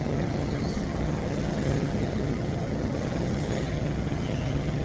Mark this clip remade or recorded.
remade